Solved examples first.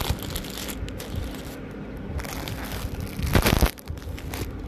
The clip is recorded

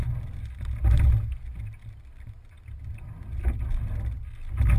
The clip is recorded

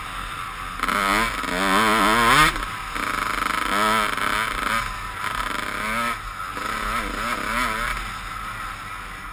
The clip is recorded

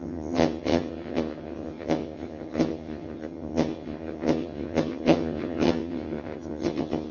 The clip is remade